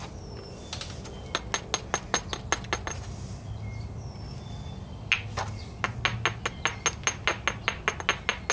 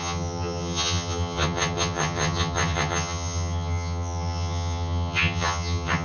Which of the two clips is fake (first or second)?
second